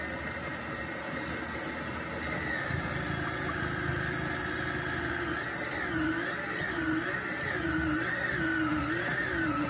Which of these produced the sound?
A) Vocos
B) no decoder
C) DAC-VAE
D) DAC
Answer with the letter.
B